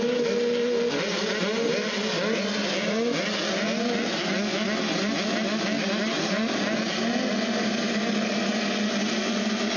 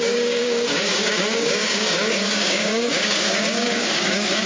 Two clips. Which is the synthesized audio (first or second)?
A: second